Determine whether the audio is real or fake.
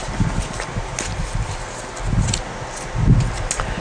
real